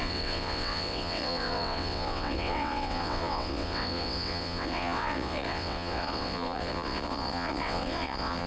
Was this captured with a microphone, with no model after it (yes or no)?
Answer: no